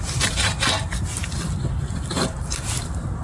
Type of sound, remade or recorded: remade